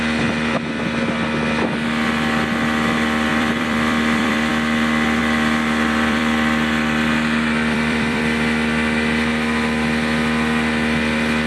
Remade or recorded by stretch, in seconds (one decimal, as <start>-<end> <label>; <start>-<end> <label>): 0.0-3.3 recorded; 3.3-4.5 remade; 4.5-5.2 recorded; 5.2-8.2 remade; 8.2-11.5 recorded